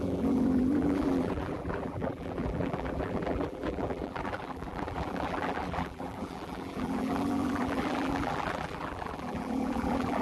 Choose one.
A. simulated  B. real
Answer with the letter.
A